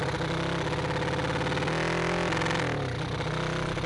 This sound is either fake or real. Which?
real